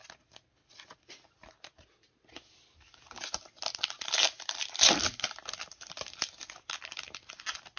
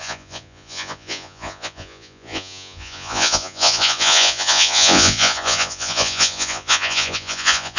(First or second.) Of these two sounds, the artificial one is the second